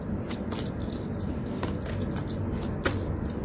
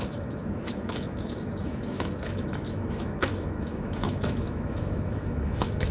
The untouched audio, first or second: first